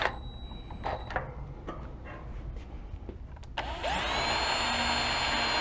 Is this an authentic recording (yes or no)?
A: yes